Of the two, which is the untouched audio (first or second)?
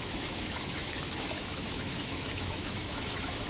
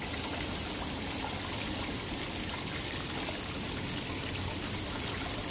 second